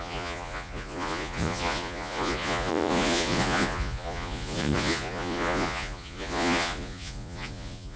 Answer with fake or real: fake